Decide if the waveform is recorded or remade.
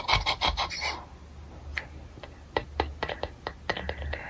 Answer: recorded